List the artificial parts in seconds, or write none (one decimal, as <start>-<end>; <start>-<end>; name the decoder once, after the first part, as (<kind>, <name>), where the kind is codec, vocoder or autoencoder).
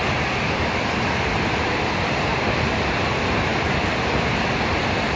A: none